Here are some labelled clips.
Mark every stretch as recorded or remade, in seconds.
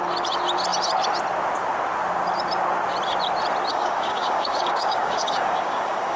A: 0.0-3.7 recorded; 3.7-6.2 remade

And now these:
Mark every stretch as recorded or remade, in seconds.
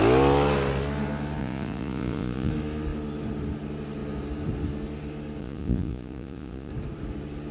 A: 0.0-1.4 recorded; 1.4-2.5 remade; 2.5-5.4 recorded; 5.4-6.7 remade; 6.7-7.5 recorded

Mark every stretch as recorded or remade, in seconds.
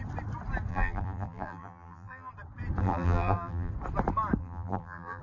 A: 0.0-0.7 recorded; 0.7-2.3 remade; 2.3-2.8 recorded; 2.8-3.7 remade; 3.7-4.4 recorded; 4.4-5.2 remade